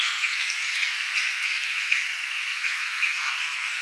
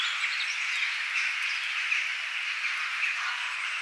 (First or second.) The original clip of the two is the second